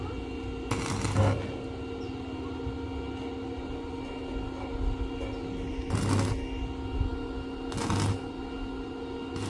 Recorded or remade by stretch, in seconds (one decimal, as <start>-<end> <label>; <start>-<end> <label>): 0.0-9.5 recorded